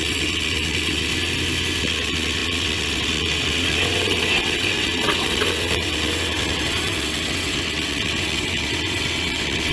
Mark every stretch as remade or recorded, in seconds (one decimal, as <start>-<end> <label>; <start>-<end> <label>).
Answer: 0.0-1.1 remade; 1.1-1.8 recorded; 1.8-9.7 remade

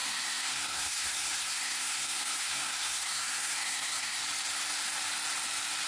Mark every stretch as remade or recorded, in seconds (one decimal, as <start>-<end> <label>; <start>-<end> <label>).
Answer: 0.0-4.2 remade; 4.2-5.9 recorded

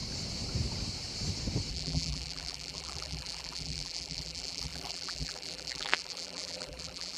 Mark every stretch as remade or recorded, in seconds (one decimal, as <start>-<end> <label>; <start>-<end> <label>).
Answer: 0.0-1.7 recorded; 1.7-7.2 remade

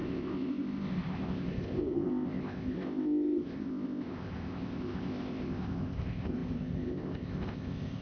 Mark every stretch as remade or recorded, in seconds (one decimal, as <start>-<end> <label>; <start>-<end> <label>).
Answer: 0.0-8.0 remade

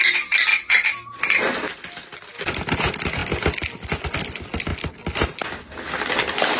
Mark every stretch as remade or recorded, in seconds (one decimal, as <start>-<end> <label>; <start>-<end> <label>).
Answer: 0.0-0.5 recorded; 0.5-2.5 remade; 2.5-6.6 recorded

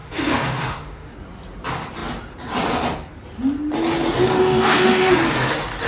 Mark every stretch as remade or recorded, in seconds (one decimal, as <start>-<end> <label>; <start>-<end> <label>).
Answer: 0.0-1.1 remade; 1.1-4.4 recorded; 4.4-5.1 remade; 5.1-5.9 recorded

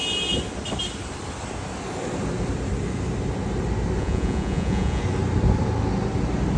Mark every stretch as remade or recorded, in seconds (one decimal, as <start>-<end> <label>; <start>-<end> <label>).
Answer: 0.0-4.0 recorded; 4.0-5.0 remade; 5.0-6.6 recorded

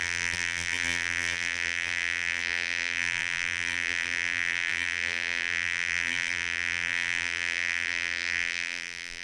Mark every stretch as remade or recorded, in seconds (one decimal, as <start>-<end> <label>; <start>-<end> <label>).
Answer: 0.0-9.2 remade